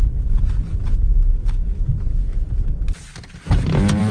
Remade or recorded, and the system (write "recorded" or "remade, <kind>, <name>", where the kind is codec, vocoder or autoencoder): recorded